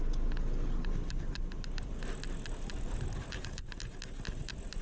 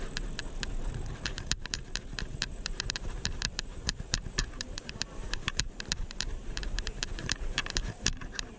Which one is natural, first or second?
first